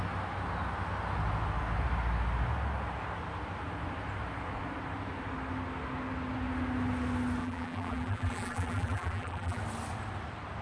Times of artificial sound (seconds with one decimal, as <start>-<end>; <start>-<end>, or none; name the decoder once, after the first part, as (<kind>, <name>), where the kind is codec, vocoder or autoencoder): 7.4-9.6 (vocoder, BigVGAN v2)